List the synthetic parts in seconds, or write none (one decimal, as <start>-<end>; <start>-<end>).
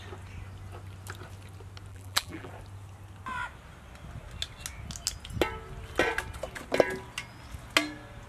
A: 1.9-2.5